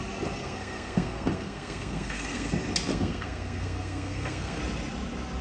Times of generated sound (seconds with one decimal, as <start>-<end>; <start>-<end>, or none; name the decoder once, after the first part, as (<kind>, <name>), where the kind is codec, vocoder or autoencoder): 0.4-2.5 (codec, SNAC); 2.9-4.6